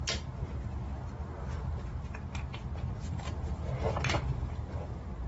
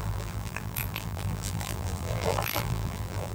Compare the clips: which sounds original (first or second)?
first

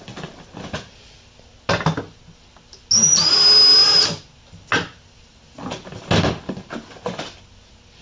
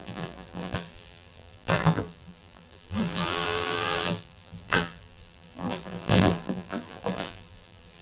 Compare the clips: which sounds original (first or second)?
first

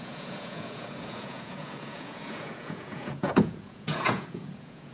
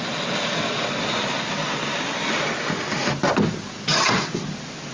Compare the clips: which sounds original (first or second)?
second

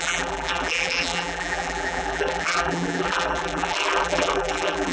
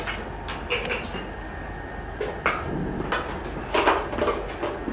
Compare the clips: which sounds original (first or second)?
second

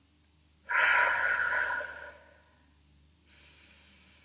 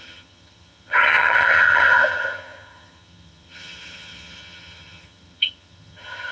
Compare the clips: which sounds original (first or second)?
first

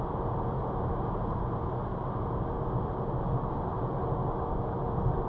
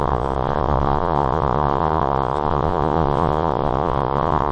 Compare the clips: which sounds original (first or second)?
first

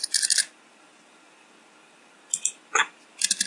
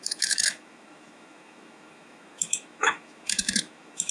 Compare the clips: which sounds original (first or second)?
first